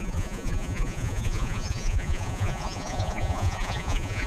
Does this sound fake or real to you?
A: fake